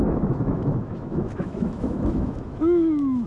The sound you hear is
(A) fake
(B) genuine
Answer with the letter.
A